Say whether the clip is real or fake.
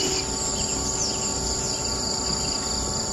real